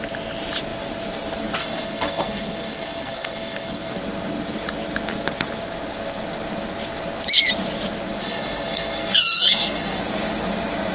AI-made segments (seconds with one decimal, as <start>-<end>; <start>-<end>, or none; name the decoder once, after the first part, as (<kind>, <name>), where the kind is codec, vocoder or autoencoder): 1.6-4.0 (codec, SNAC); 8.2-10.0